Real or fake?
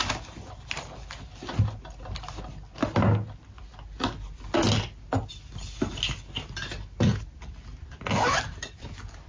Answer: real